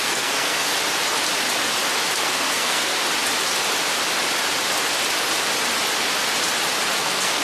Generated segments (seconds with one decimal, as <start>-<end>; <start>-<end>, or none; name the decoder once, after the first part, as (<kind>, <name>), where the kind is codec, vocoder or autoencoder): 0.0-0.7 (codec, SNAC); 2.2-3.0; 7.0-7.4